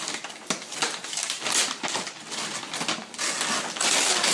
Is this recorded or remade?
recorded